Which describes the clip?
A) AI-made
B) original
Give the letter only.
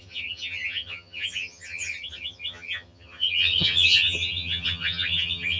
A